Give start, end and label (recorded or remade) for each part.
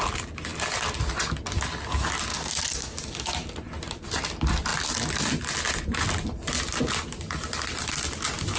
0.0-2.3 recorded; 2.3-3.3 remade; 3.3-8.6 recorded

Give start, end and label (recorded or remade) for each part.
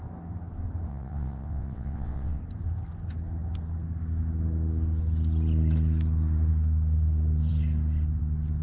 0.0-0.9 recorded; 0.9-2.4 remade; 2.4-8.6 recorded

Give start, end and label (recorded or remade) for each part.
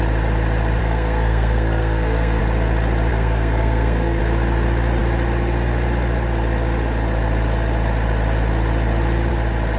0.0-0.8 recorded; 0.8-2.4 remade; 2.4-3.1 recorded; 3.1-4.2 remade; 4.2-9.8 recorded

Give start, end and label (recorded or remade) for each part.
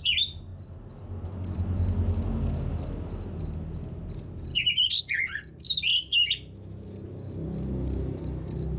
0.0-8.8 recorded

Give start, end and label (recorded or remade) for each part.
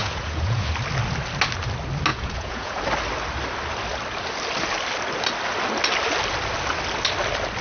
0.0-0.7 remade; 0.7-2.1 recorded; 2.1-2.8 remade; 2.8-7.6 recorded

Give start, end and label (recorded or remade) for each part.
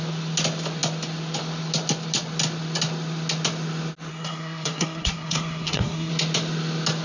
0.0-4.1 recorded; 4.1-6.1 remade; 6.1-7.0 recorded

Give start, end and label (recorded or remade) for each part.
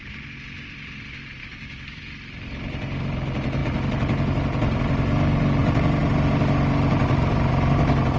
0.0-1.4 recorded; 1.4-2.0 remade; 2.0-8.2 recorded